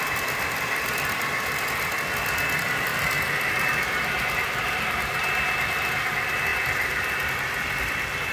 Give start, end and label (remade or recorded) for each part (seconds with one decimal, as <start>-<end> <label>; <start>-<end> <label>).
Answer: 0.0-8.3 recorded